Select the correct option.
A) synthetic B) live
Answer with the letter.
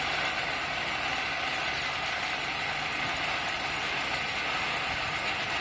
B